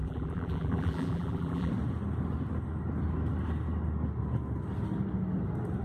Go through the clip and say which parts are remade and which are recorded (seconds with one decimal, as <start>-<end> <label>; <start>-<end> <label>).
0.0-1.7 remade; 1.7-5.8 recorded